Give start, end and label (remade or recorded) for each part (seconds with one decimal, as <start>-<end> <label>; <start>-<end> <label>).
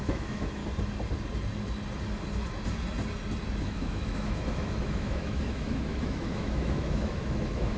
0.0-0.6 remade; 0.6-3.6 recorded; 3.6-7.8 remade